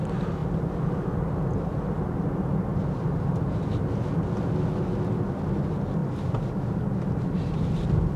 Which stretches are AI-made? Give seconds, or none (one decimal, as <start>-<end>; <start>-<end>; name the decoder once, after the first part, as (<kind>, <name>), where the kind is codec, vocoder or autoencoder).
2.7-4.0 (vocoder, BigVGAN v2); 6.0-6.5

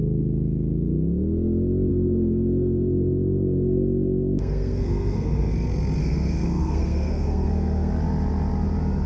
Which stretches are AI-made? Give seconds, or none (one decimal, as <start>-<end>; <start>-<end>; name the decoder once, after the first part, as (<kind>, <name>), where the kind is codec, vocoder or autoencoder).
1.9-5.5 (codec, SNAC); 6.0-7.9

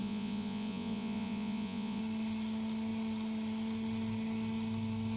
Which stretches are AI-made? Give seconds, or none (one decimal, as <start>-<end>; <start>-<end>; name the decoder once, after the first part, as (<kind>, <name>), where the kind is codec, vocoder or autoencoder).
0.0-2.0 (vocoder, Vocos)

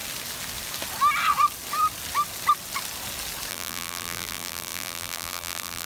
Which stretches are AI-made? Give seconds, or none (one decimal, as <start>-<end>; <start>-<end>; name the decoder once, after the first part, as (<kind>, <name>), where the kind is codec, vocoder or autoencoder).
3.5-5.8 (vocoder, BigVGAN v2)

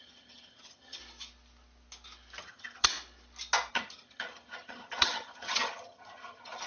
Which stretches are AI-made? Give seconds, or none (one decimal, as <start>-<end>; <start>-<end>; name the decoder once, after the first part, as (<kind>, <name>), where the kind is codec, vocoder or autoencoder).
0.0-1.0 (vocoder, HiFi-GAN); 2.4-2.9; 3.7-6.7